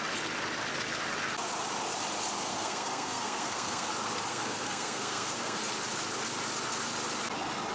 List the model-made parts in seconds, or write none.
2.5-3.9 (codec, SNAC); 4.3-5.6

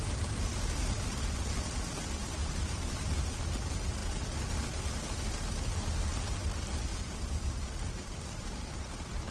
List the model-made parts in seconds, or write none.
2.2-3.4 (vocoder, BigVGAN v2); 6.9-9.3

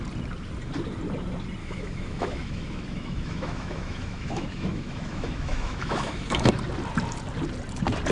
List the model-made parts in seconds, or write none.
1.6-6.5 (autoencoder, DAC-VAE)

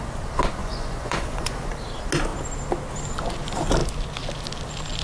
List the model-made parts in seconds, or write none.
0.6-1.7 (vocoder, Vocos)

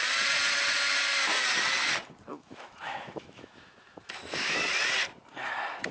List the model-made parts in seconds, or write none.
2.3-4.7 (autoencoder, DAC-VAE)